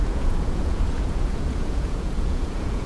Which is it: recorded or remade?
remade